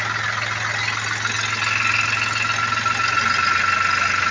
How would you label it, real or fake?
real